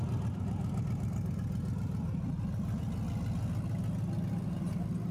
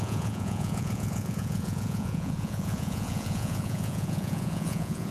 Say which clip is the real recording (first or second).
first